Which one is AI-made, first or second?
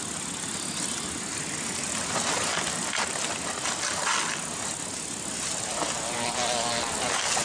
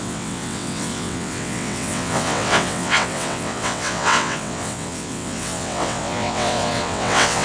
second